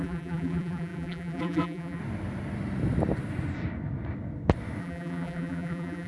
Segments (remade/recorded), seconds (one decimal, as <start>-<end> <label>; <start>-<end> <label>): 0.0-2.0 remade; 2.0-4.8 recorded; 4.8-6.1 remade